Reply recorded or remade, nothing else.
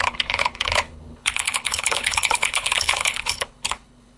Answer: remade